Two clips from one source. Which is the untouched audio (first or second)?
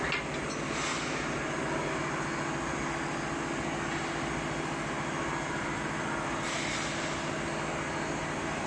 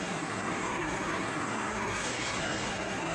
first